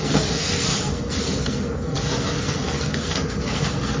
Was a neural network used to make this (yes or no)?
yes